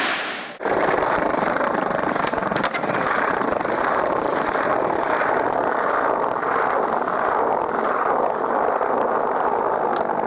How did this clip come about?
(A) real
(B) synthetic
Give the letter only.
A